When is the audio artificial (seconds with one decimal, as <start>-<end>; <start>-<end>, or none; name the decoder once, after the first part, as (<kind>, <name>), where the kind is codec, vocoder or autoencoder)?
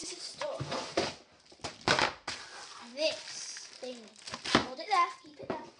0.0-0.9 (vocoder, Vocos); 4.6-5.8